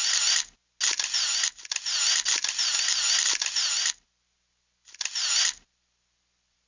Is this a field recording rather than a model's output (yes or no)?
yes